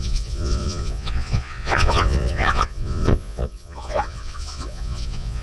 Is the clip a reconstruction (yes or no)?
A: yes